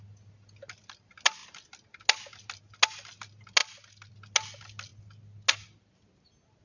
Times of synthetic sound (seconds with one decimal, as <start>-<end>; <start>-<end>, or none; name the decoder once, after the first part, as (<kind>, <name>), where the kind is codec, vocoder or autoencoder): none